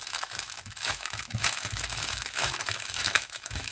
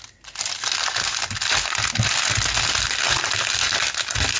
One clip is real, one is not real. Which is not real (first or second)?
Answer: first